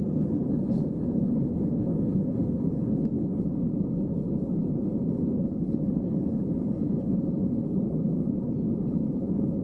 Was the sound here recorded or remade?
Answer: remade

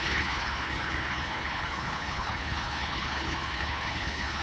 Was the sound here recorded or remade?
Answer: remade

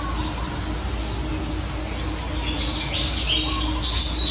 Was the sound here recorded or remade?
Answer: recorded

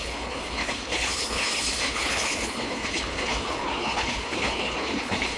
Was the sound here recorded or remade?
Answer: remade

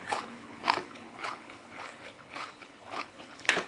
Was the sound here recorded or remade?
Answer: remade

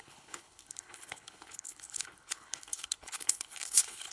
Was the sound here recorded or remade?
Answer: remade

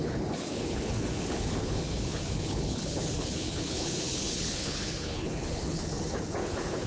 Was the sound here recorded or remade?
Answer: remade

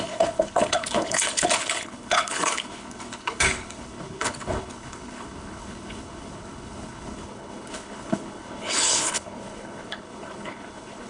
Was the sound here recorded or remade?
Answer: remade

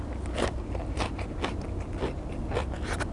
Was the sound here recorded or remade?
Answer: recorded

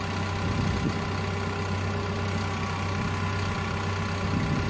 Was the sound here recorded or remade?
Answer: recorded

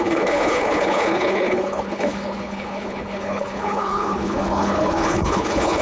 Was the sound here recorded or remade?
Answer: remade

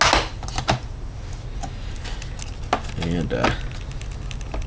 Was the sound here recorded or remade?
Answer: recorded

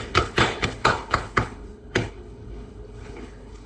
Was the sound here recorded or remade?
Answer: remade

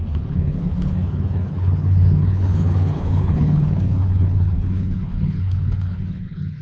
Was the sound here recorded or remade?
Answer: remade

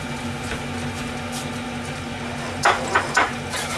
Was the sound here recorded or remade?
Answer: recorded